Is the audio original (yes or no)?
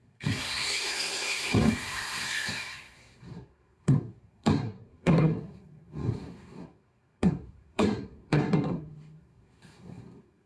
no